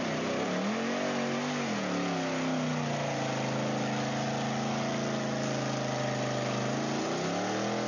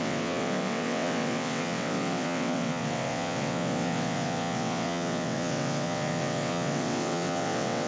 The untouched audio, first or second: first